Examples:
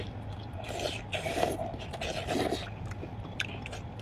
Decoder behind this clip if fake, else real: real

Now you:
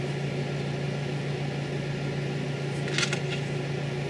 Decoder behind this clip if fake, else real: real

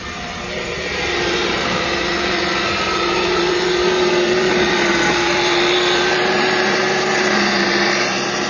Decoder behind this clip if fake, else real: fake, vocoder, BigVGAN v2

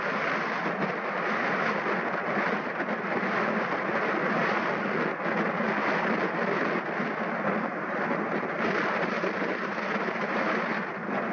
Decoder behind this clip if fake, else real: real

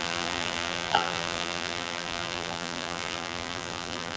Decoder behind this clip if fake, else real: fake, vocoder, BigVGAN v2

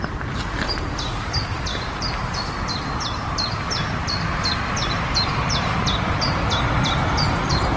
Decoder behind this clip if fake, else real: fake, vocoder, BigVGAN v2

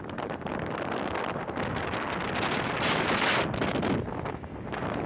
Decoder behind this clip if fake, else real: real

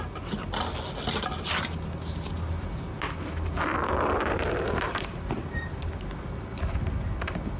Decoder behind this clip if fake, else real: real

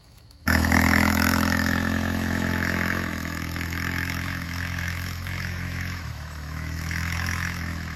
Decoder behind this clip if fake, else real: fake, autoencoder, DAC-VAE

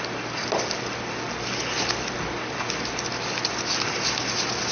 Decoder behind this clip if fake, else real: real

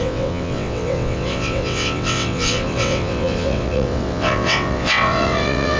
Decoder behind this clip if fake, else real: fake, vocoder, WaveNeXt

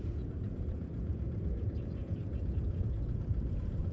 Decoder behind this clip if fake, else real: fake, vocoder, Vocos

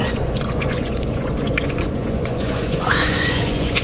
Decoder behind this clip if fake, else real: fake, vocoder, Vocos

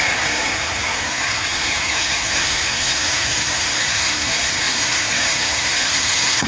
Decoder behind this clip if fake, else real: fake, codec, SNAC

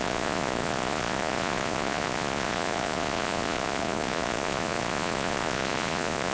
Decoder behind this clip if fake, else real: fake, vocoder, Vocos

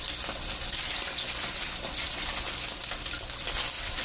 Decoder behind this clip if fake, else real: fake, vocoder, BigVGAN v2